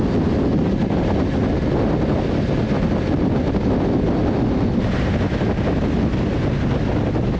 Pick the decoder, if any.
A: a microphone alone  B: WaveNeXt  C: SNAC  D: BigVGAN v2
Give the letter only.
A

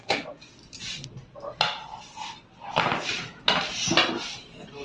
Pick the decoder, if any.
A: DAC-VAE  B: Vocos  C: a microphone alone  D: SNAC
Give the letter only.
C